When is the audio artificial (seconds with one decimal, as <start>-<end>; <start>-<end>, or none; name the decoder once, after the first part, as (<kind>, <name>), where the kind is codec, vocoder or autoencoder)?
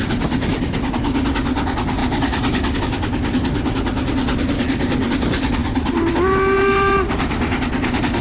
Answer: none